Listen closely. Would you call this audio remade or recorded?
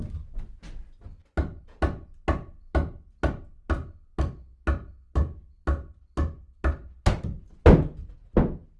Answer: recorded